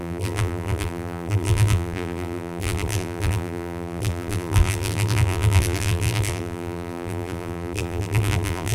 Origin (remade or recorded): remade